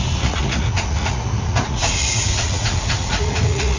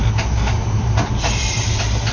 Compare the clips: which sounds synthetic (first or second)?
first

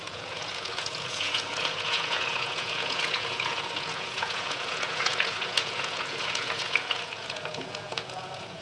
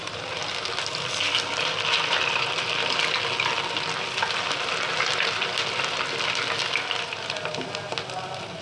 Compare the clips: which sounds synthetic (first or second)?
first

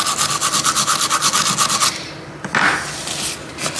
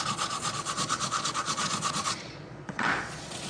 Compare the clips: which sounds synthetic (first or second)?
second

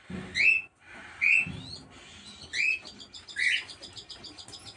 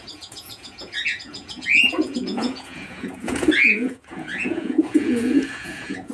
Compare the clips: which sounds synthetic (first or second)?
second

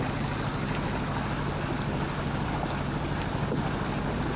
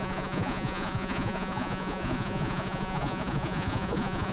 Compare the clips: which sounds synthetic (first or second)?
second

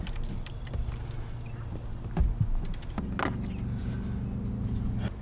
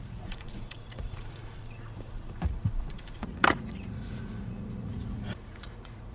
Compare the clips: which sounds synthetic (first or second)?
second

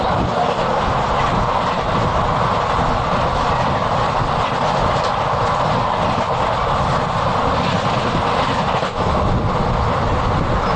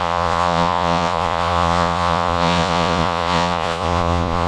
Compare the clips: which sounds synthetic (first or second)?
second